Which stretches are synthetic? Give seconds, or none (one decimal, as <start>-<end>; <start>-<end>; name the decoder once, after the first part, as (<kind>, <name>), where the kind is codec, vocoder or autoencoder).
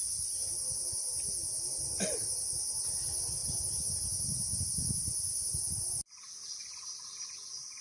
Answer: 0.0-2.5 (vocoder, BigVGAN v2)